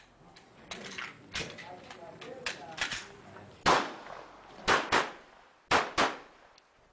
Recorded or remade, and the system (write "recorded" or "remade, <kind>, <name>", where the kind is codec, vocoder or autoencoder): recorded